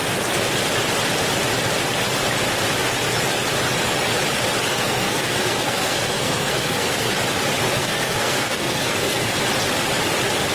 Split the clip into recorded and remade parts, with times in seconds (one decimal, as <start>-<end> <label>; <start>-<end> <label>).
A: 0.0-4.7 recorded; 4.7-7.1 remade; 7.1-7.8 recorded; 7.8-9.4 remade; 9.4-10.5 recorded